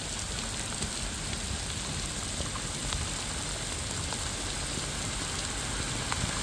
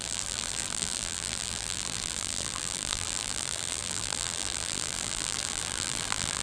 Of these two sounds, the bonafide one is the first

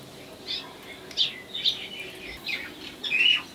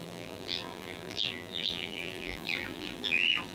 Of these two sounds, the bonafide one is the first